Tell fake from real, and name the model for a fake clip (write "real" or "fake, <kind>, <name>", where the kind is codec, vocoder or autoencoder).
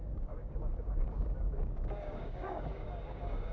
fake, codec, DAC